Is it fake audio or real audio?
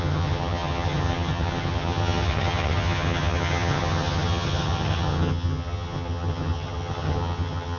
fake